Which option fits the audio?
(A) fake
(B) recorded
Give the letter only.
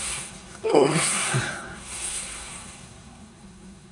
A